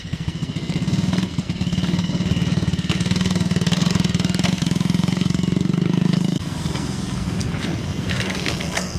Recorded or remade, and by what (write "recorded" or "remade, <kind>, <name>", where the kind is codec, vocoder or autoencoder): remade, codec, SNAC